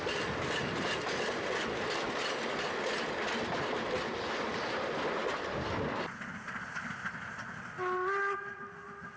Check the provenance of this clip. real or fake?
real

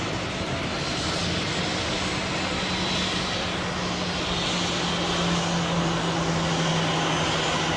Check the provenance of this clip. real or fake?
real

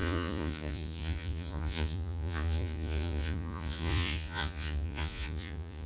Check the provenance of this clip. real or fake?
fake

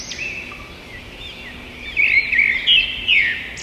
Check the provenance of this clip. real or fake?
real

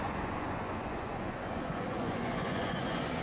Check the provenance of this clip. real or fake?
fake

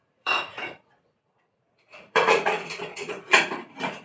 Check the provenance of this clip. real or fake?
fake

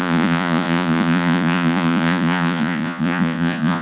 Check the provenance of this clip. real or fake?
fake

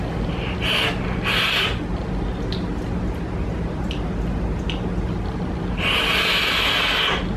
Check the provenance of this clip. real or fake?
real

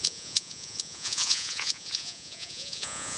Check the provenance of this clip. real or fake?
fake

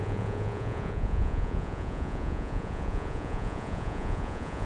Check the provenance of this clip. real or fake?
fake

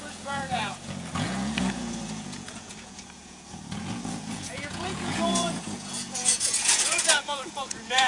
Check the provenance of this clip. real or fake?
fake